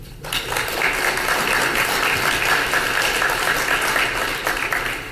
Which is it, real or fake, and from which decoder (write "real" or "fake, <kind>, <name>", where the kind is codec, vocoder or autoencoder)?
real